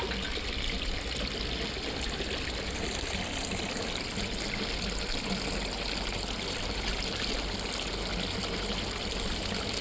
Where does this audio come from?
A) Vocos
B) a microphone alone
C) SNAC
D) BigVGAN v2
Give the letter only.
B